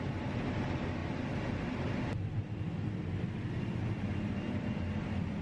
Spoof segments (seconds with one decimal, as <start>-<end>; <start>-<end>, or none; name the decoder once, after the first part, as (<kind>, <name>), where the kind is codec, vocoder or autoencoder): none